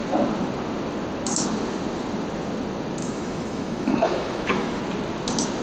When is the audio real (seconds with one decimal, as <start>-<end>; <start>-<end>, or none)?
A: 0.0-3.0; 4.8-5.6